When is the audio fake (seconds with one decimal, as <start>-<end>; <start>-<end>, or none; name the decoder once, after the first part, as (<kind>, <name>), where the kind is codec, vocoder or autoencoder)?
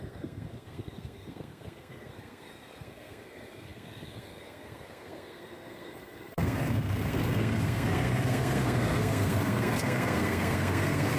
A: 0.0-11.2 (codec, SNAC)